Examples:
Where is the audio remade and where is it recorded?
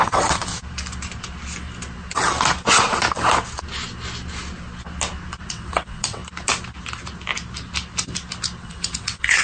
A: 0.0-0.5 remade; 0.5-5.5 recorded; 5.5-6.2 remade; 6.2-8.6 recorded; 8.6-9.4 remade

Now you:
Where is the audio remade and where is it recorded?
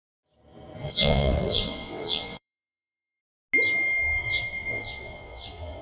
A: 0.0-0.8 recorded; 0.8-3.2 remade; 3.2-4.2 recorded; 4.2-5.8 remade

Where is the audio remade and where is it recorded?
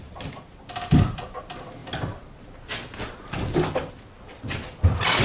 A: 0.0-5.2 recorded